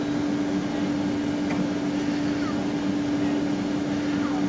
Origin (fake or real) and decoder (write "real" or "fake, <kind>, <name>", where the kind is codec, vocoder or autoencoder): real